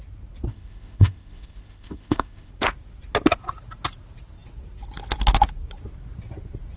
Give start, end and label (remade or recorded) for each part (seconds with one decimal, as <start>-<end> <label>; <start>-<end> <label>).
0.0-0.5 recorded; 0.5-2.5 remade; 2.5-6.8 recorded

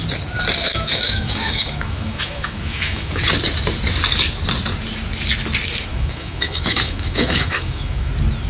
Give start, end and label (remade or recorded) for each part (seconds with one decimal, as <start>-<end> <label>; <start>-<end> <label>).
0.0-0.6 recorded; 0.6-3.2 remade; 3.2-5.9 recorded; 5.9-8.1 remade; 8.1-8.5 recorded

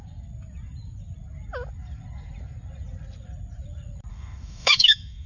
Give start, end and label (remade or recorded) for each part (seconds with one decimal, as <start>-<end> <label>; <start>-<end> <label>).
0.0-4.1 recorded; 4.1-5.3 remade

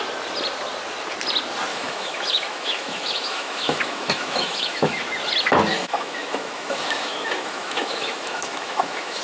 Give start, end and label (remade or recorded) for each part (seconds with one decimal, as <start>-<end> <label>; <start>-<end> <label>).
0.0-1.7 recorded; 1.7-5.0 remade; 5.0-5.7 recorded; 5.7-9.2 remade

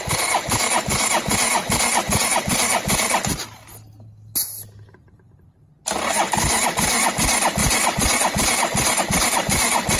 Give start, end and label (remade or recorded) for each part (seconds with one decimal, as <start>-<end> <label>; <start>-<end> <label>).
0.0-10.0 recorded